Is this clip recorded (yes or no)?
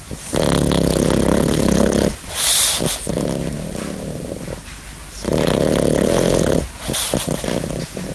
yes